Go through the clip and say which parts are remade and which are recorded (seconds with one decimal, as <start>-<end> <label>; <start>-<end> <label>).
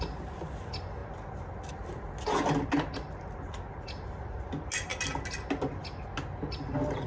0.0-7.1 recorded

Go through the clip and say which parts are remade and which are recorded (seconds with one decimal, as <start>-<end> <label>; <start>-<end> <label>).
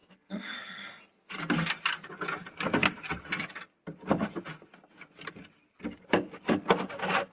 0.0-1.0 remade; 1.0-7.3 recorded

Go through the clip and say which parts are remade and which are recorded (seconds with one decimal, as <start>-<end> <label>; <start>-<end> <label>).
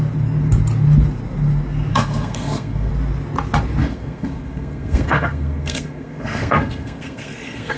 0.0-1.9 recorded; 1.9-2.9 remade; 2.9-3.8 recorded; 3.8-7.8 remade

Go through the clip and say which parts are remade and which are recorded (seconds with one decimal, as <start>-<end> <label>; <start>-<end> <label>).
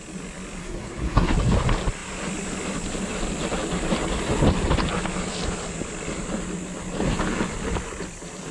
0.0-0.6 recorded; 0.6-1.3 remade; 1.3-8.5 recorded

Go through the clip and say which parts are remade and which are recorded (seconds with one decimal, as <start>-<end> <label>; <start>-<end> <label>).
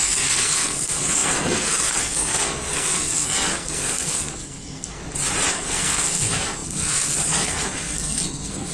0.0-5.0 remade; 5.0-5.5 recorded; 5.5-8.7 remade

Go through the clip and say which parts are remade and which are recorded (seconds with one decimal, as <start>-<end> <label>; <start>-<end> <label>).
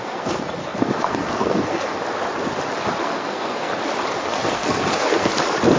0.0-1.9 remade; 1.9-3.0 recorded; 3.0-3.7 remade; 3.7-4.2 recorded; 4.2-5.3 remade; 5.3-5.8 recorded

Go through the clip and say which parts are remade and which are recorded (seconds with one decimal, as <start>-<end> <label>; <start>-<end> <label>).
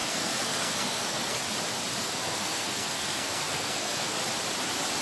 0.0-1.4 remade; 1.4-2.0 recorded; 2.0-4.2 remade; 4.2-5.0 recorded